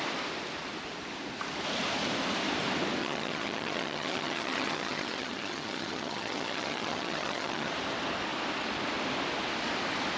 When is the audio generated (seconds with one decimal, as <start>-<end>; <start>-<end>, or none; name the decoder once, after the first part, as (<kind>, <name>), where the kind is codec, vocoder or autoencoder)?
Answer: 3.0-7.7 (vocoder, HiFi-GAN)